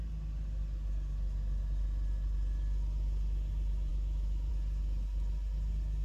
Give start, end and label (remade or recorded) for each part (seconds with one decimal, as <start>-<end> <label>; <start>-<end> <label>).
0.0-3.9 recorded; 3.9-4.5 remade; 4.5-6.0 recorded